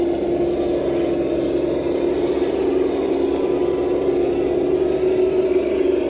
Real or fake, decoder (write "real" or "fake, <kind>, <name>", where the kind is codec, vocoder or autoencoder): real